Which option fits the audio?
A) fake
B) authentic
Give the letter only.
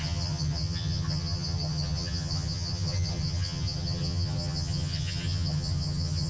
A